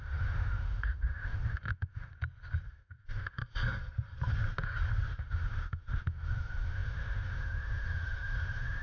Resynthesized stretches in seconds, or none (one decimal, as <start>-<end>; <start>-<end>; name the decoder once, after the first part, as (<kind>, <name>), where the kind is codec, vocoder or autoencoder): 0.0-2.1 (autoencoder, DAC-VAE); 2.7-3.4; 5.2-8.8